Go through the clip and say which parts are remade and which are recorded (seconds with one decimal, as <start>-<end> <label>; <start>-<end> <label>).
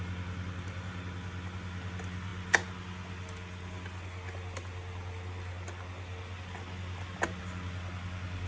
0.0-8.5 recorded